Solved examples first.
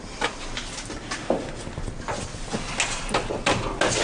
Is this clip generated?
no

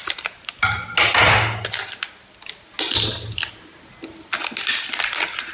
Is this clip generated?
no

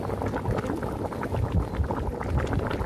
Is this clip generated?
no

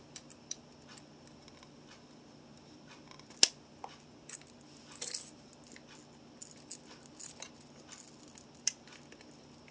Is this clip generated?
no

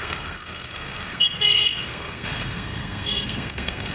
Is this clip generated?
yes